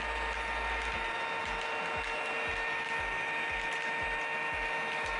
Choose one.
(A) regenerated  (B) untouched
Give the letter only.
B